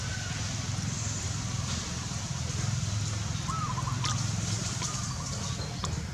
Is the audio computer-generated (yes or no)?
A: no